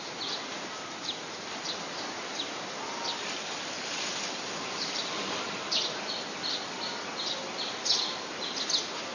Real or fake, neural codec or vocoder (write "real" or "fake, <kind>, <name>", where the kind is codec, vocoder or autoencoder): real